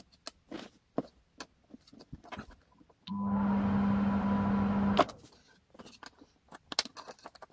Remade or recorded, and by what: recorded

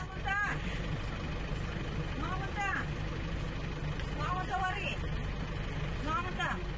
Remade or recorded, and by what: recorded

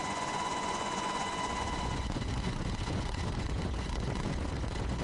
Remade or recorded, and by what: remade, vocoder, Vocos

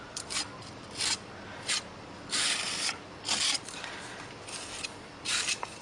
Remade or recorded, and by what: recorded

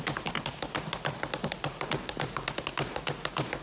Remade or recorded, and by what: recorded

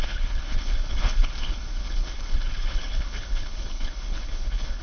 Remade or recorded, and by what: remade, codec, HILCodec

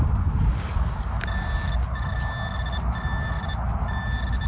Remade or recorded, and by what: recorded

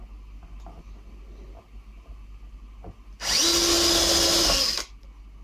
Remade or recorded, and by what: recorded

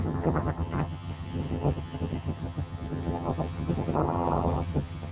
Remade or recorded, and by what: remade, vocoder, HiFi-GAN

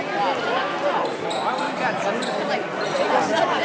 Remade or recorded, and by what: recorded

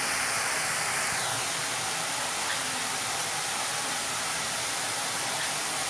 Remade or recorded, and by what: recorded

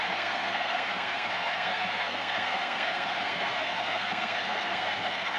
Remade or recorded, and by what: remade, codec, SNAC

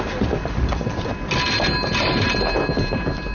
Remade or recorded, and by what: recorded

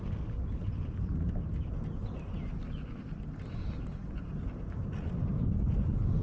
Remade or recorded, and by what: recorded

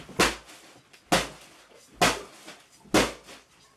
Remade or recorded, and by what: recorded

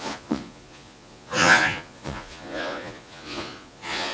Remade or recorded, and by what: remade, vocoder, Vocos